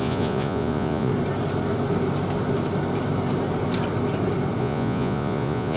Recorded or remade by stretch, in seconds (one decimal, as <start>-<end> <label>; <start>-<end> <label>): 0.0-1.1 remade; 1.1-4.6 recorded; 4.6-5.8 remade

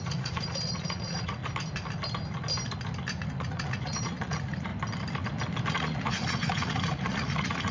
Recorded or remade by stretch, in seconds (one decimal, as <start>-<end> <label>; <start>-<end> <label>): 0.0-1.4 remade; 1.4-3.4 recorded; 3.4-4.7 remade; 4.7-5.7 recorded; 5.7-7.7 remade